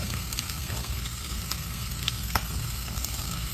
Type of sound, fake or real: fake